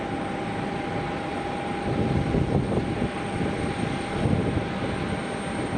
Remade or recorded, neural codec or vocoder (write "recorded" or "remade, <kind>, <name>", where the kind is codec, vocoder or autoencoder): recorded